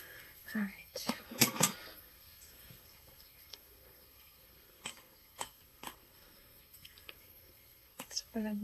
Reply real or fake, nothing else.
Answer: fake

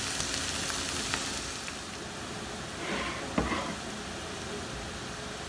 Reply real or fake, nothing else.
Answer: real